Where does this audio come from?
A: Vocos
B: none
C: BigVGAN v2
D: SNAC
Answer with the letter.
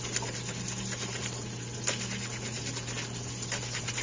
B